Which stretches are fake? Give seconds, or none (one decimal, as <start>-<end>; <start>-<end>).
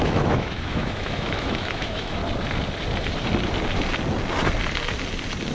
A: 0.0-2.2